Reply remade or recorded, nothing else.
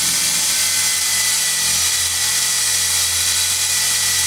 recorded